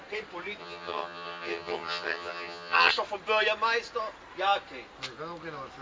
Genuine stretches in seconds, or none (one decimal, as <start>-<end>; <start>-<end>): 0.0-0.6; 2.9-5.8